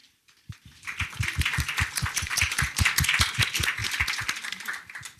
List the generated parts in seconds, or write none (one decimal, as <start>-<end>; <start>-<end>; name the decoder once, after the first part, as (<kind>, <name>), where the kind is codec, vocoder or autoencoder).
0.0-2.8 (vocoder, BigVGAN v2)